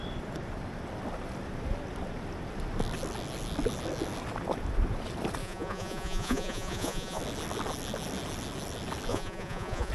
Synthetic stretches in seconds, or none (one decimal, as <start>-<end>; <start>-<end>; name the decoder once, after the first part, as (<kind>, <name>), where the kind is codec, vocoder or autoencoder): 5.4-7.2 (vocoder, Vocos); 9.1-9.9